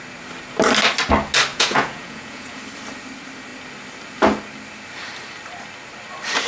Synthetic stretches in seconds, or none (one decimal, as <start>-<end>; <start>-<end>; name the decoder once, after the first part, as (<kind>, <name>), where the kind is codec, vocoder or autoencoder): 1.5-2.6 (vocoder, Vocos)